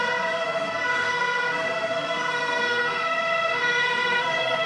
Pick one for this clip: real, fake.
fake